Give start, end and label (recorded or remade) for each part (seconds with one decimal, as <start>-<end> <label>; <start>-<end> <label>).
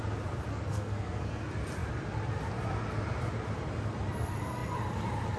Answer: 0.0-0.5 recorded; 0.5-1.4 remade; 1.4-5.4 recorded